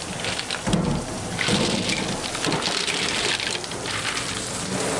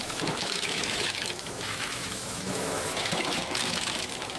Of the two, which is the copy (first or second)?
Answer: second